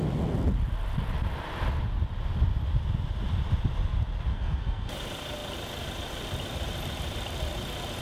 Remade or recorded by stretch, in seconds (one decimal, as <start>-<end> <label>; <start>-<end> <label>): 0.0-4.3 recorded; 4.3-4.9 remade; 4.9-8.0 recorded

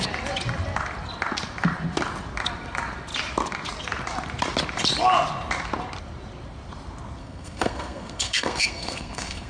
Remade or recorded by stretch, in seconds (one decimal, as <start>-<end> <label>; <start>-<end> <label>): 0.0-7.2 recorded; 7.2-9.5 remade

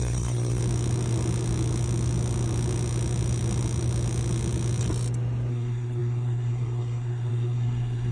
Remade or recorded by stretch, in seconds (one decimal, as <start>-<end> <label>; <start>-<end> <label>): 0.0-0.6 remade; 0.6-5.5 recorded; 5.5-8.1 remade

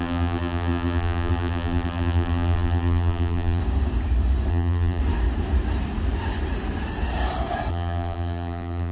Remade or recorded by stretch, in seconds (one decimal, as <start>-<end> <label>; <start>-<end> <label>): 0.0-3.6 remade; 3.6-4.5 recorded; 4.5-5.0 remade; 5.0-7.7 recorded; 7.7-8.9 remade

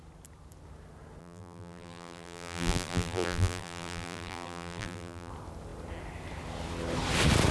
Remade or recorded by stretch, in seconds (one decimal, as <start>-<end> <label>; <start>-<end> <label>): 0.0-1.2 recorded; 1.2-5.3 remade; 5.3-7.5 recorded